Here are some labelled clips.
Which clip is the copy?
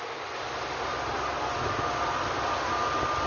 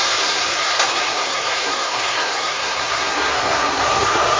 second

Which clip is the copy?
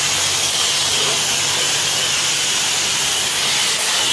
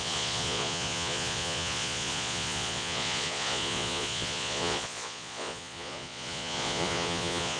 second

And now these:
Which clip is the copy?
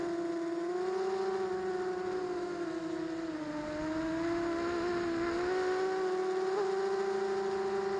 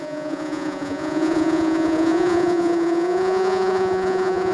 second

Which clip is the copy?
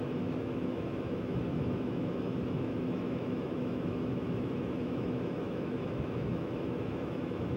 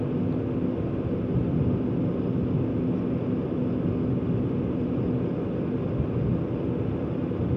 first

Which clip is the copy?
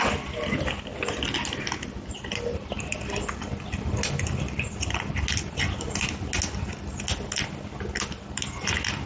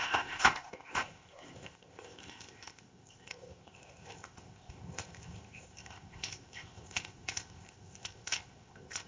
second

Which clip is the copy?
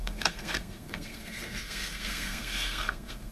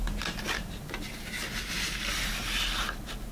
first